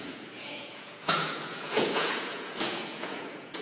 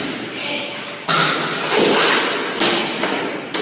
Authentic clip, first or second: second